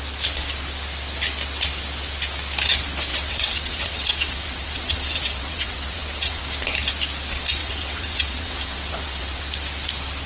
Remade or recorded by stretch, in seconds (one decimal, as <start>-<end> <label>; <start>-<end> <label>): 0.0-3.1 recorded; 3.1-6.4 remade; 6.4-7.6 recorded; 7.6-9.4 remade; 9.4-10.3 recorded